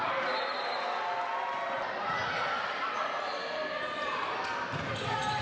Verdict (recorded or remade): recorded